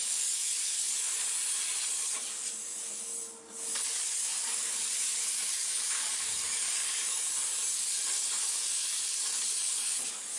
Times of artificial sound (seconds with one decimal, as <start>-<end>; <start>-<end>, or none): 0.0-1.2; 1.9-10.4